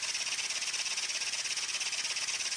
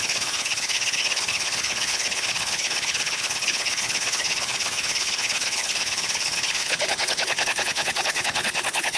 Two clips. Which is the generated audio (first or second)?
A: second